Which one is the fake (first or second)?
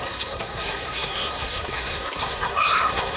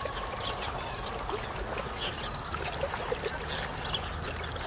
first